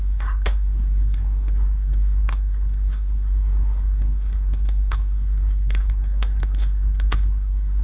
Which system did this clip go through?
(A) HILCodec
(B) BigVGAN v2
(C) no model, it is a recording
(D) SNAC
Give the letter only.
D